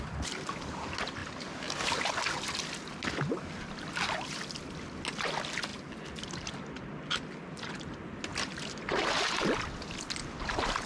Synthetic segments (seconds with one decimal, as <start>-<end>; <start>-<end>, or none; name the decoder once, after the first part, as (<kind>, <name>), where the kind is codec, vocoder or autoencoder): none